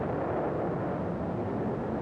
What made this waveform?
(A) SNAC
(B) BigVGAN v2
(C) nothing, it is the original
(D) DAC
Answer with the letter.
C